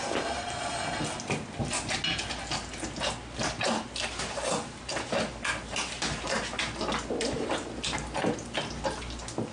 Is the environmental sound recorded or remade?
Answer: recorded